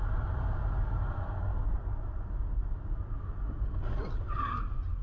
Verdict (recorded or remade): recorded